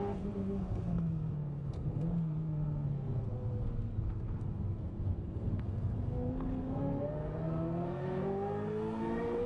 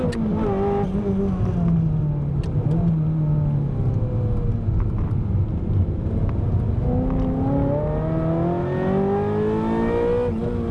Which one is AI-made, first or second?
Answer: first